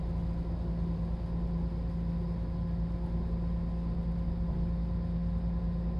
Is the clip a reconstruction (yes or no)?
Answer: no